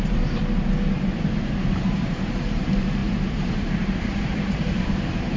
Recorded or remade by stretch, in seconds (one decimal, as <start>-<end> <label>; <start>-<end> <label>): 0.0-0.4 remade; 0.4-1.7 recorded; 1.7-5.4 remade

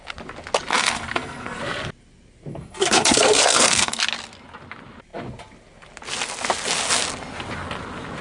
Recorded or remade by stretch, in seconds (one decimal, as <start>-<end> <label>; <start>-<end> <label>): 0.0-0.7 recorded; 0.7-1.6 remade; 1.6-2.5 recorded; 2.5-4.0 remade; 4.0-8.2 recorded